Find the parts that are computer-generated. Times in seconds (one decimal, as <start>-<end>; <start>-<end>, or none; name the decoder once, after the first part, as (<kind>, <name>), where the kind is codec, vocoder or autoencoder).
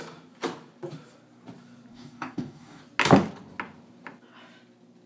1.9-2.8 (codec, DAC)